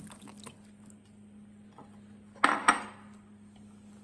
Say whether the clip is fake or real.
real